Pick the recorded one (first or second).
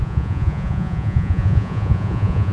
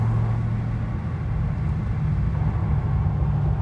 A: second